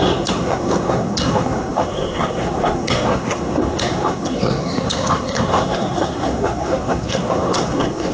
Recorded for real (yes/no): no